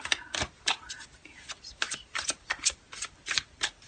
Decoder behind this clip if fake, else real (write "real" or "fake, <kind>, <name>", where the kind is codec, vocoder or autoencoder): real